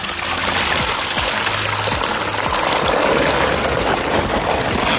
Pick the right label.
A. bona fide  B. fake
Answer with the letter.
A